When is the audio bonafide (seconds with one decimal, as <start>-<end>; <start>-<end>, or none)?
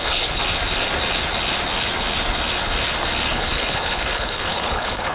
0.4-3.3